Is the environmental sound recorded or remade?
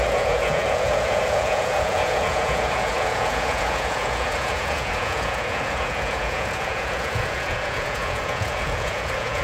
remade